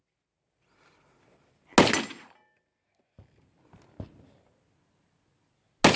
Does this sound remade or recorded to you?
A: recorded